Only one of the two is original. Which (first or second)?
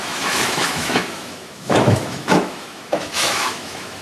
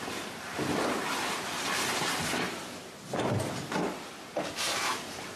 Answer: second